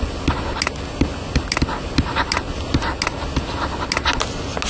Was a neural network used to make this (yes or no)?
no